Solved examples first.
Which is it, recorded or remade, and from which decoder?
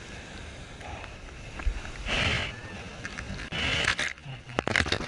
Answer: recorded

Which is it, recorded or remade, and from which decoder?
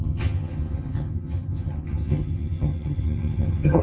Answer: remade, vocoder, HiFi-GAN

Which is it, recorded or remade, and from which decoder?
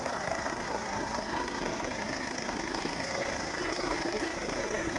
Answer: remade, codec, SNAC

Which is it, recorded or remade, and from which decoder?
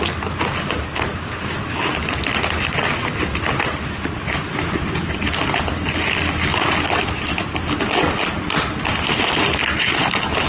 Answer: recorded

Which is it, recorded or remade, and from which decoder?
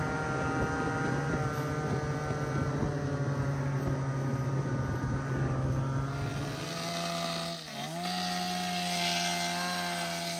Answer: recorded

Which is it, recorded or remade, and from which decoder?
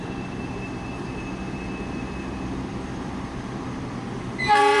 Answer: remade, vocoder, BigVGAN v2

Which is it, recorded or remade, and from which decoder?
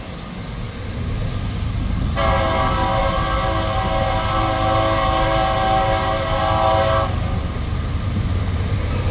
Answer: recorded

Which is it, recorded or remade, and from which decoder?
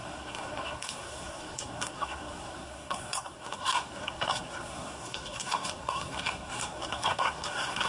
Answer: remade, codec, SNAC